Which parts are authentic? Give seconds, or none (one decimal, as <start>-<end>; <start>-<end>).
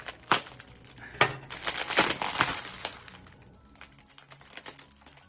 0.0-5.3